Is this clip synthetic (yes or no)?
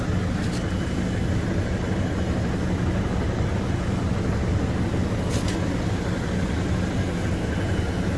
no